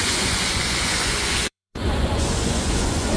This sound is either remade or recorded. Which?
remade